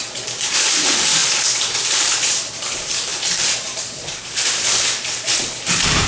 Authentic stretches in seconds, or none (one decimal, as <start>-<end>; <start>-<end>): none